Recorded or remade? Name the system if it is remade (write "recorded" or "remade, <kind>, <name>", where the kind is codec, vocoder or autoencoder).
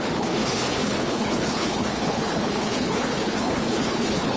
remade, codec, HILCodec